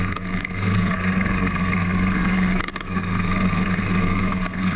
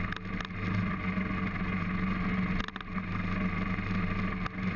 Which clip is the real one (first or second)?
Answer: second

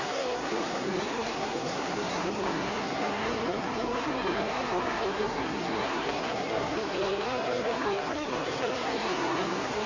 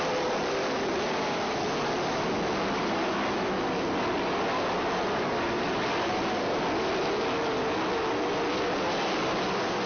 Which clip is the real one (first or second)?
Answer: second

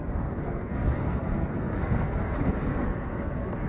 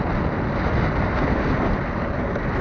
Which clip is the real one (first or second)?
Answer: second